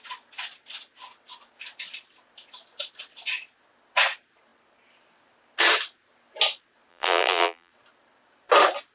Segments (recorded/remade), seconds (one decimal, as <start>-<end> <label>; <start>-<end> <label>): 0.0-6.9 recorded; 6.9-7.7 remade; 7.7-8.9 recorded